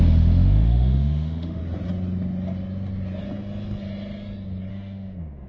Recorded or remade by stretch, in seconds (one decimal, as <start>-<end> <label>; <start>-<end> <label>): 0.0-1.6 remade; 1.6-4.7 recorded; 4.7-5.5 remade